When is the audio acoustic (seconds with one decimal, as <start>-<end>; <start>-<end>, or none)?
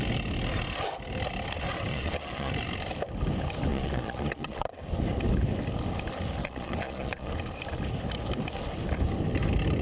0.0-1.9; 2.5-3.7; 4.8-6.4; 7.3-9.8